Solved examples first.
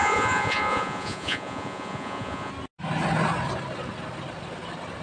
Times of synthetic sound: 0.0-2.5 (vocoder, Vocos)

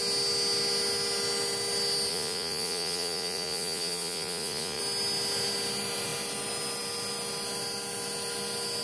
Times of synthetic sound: 2.1-4.8 (vocoder, Vocos)